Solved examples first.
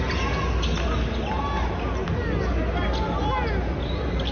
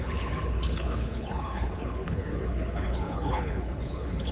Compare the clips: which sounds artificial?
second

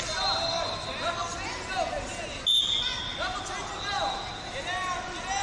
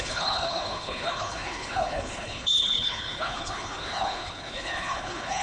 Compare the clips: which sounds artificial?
second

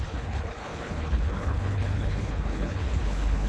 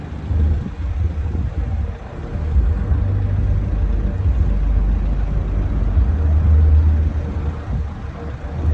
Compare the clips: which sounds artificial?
first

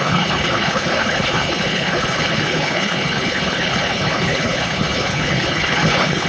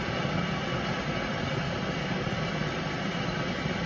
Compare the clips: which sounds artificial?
first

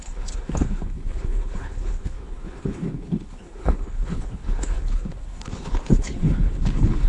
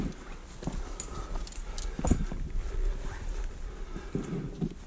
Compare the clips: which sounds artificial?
first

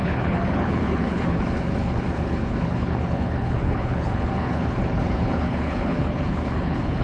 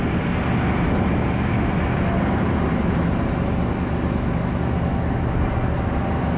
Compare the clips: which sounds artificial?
first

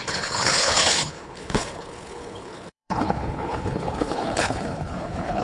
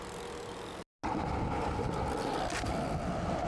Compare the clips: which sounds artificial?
first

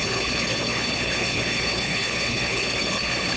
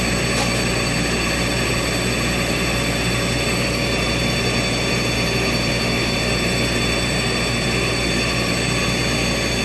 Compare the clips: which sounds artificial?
first